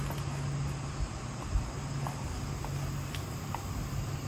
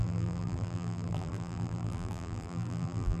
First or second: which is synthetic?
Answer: second